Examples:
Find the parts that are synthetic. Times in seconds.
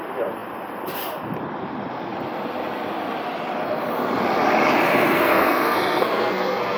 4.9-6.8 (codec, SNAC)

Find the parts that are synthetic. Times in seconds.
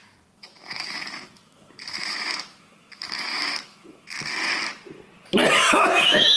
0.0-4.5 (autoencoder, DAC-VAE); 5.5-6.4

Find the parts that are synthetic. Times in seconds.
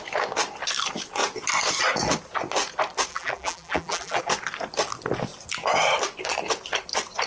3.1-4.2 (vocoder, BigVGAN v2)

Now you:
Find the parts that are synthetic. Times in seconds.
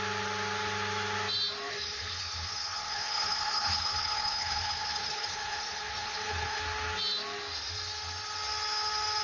1.7-6.6 (codec, HILCodec)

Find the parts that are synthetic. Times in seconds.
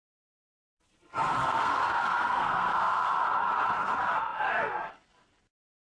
1.4-3.1 (codec, SNAC)